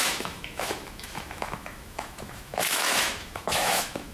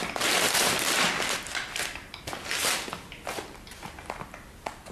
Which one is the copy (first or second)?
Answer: first